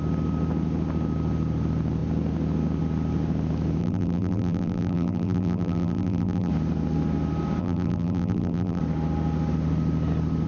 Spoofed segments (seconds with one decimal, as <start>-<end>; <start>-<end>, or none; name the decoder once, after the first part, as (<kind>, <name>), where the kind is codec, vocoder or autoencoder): 3.8-6.5 (vocoder, BigVGAN v2); 7.6-8.8

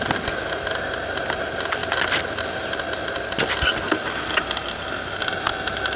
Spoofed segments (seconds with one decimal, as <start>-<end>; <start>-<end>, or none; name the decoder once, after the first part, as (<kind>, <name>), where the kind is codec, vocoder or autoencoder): none